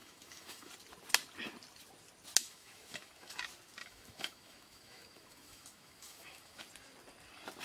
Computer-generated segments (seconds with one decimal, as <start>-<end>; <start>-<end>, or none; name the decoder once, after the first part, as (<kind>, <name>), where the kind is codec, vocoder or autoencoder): 0.0-0.7 (autoencoder, DAC-VAE); 2.4-3.4; 3.8-6.6